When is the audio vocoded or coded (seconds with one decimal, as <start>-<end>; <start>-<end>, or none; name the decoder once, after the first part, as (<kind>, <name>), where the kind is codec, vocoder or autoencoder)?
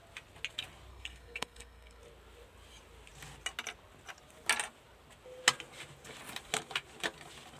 0.9-2.0 (codec, SNAC)